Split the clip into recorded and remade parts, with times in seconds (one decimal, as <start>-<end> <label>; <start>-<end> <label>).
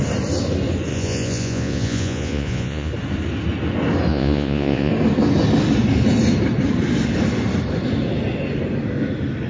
0.0-0.9 recorded; 0.9-2.9 remade; 2.9-4.1 recorded; 4.1-4.9 remade; 4.9-9.5 recorded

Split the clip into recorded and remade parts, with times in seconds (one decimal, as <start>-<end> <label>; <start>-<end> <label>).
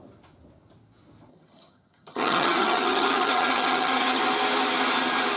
0.0-1.3 recorded; 1.3-4.2 remade; 4.2-5.4 recorded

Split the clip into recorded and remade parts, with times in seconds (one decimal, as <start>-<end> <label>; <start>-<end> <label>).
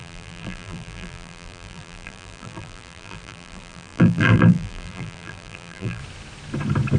0.0-6.0 remade; 6.0-7.0 recorded